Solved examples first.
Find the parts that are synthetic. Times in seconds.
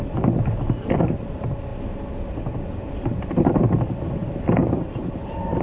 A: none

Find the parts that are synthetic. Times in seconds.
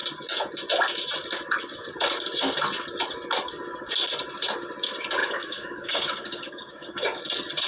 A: 5.2-7.2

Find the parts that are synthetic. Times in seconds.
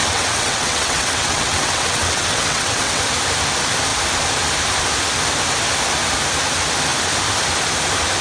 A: 0.0-3.0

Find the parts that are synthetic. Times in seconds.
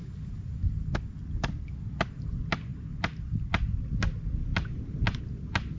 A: none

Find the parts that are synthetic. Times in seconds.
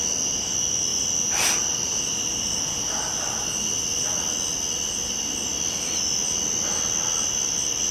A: none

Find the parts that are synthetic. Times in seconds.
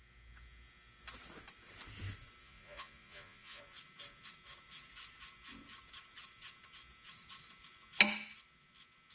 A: 2.4-3.6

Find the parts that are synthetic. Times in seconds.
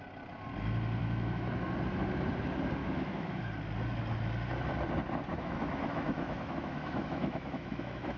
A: 1.0-1.6; 2.8-3.4; 5.3-8.2